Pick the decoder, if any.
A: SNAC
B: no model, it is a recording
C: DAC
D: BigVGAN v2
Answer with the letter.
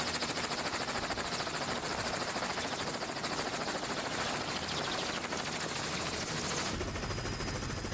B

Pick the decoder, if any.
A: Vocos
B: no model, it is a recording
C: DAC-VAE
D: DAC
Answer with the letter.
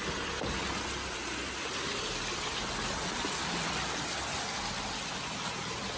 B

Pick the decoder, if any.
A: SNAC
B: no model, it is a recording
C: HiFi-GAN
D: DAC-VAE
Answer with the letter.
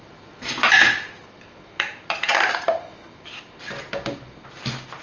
B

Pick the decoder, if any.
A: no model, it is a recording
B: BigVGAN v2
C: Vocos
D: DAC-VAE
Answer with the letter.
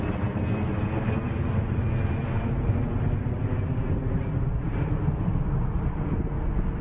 A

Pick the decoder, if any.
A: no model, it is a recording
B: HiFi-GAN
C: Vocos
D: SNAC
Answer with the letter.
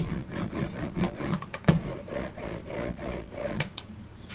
C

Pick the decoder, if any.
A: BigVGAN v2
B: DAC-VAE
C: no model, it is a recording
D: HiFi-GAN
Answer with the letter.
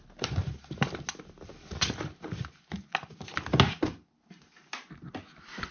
C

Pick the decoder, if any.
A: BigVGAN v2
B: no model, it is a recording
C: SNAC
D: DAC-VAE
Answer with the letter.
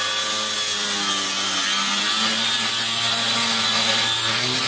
B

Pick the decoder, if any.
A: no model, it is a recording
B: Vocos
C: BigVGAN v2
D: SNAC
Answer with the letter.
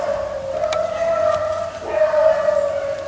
A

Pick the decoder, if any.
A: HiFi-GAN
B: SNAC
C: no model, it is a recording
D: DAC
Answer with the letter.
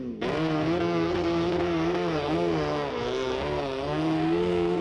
B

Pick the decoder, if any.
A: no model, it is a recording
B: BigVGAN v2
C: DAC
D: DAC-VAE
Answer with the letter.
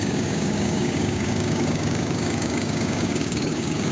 C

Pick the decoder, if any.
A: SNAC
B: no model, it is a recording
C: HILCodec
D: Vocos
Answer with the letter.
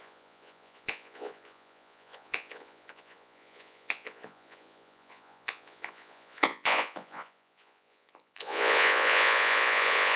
D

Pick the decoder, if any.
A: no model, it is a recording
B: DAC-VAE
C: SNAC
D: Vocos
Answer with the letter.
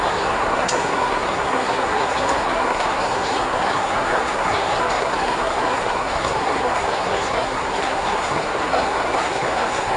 C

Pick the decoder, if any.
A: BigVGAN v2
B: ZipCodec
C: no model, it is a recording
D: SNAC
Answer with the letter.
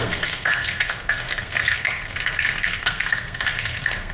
D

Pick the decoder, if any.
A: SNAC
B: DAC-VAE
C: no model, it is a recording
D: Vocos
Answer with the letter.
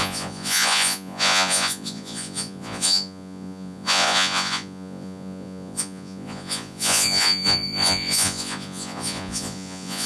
D